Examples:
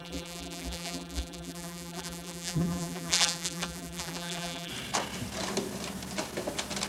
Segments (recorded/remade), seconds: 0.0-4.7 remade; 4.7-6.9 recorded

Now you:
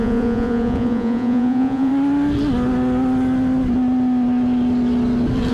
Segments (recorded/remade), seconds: 0.0-1.9 remade; 1.9-5.5 recorded

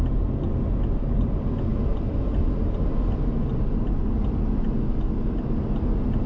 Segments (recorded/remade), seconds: 0.0-6.3 recorded